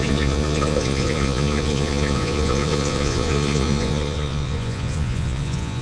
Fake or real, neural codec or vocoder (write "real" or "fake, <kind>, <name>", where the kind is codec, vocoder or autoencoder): fake, vocoder, Vocos